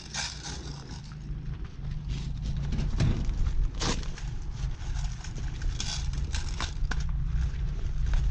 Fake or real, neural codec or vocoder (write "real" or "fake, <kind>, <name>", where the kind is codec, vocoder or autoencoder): real